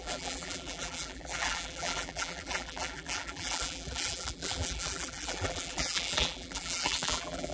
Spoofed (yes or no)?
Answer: yes